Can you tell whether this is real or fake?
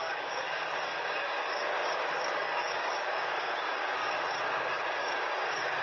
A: fake